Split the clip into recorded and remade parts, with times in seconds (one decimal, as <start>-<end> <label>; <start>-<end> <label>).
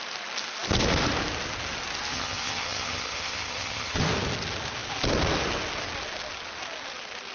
0.0-2.1 recorded; 2.1-4.0 remade; 4.0-7.3 recorded